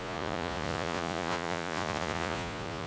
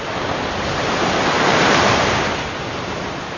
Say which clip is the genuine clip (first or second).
second